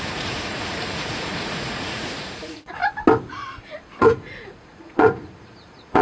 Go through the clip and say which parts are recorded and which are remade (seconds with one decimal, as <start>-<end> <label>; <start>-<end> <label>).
0.0-2.8 remade; 2.8-4.0 recorded; 4.0-6.0 remade